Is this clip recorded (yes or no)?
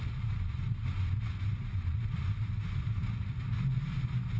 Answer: yes